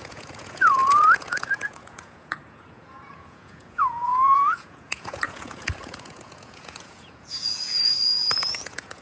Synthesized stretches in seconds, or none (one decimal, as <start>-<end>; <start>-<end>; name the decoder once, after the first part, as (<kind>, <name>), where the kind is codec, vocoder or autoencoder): 0.0-9.0 (vocoder, Vocos)